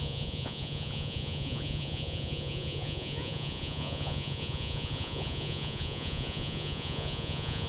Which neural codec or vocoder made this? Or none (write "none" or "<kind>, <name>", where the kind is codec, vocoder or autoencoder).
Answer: vocoder, Vocos